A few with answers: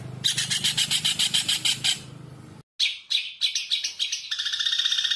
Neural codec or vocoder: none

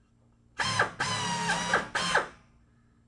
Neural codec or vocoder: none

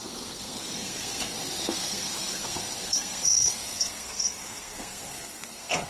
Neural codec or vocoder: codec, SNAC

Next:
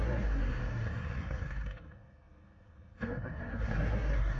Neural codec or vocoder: codec, SNAC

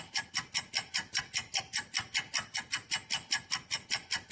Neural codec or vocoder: none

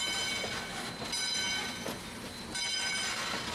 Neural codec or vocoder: none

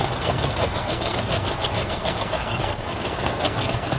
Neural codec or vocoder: codec, SNAC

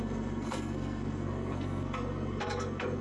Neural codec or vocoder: codec, SNAC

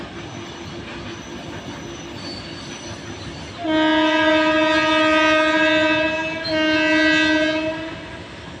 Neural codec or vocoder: none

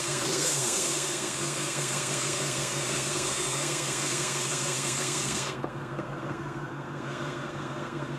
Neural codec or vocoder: codec, SNAC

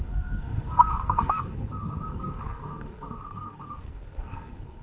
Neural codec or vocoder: codec, SNAC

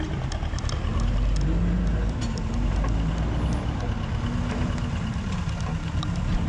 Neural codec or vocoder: none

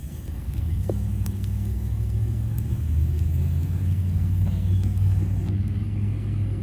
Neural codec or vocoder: codec, SNAC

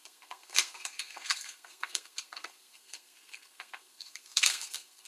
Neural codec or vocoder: codec, SNAC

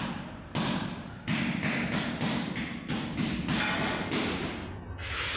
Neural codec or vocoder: none